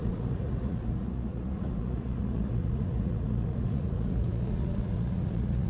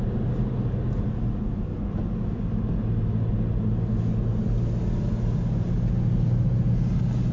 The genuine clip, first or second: second